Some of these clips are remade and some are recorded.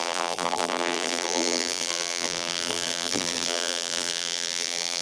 remade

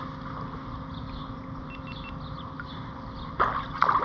recorded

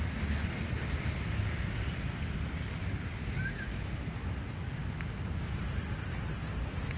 recorded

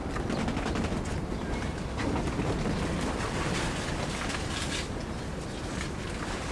recorded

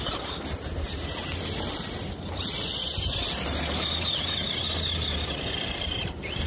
recorded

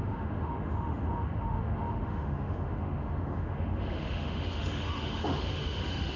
remade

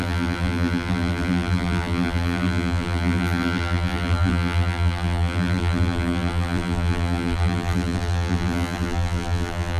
remade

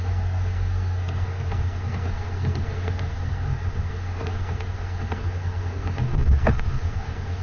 remade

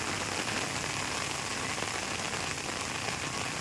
recorded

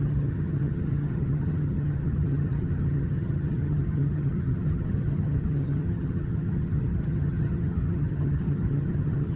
remade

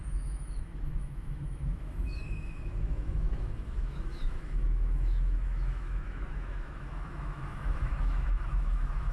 remade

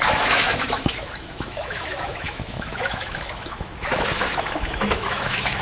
remade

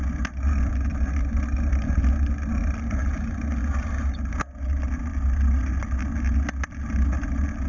recorded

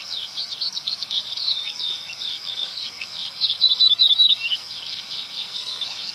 remade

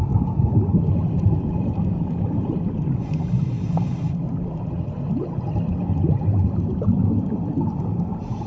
recorded